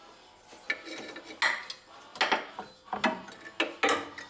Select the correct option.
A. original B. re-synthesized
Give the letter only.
A